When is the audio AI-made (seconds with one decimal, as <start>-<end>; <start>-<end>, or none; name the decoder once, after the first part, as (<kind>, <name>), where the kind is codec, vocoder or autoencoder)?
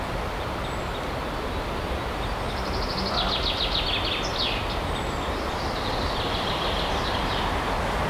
4.3-7.6 (vocoder, BigVGAN v2)